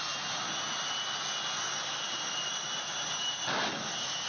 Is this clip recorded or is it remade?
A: recorded